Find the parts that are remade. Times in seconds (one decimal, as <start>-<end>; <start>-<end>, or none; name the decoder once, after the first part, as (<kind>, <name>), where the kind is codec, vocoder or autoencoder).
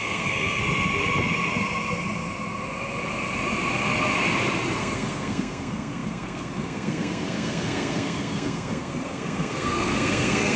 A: 0.0-0.6 (codec, SNAC); 4.8-10.6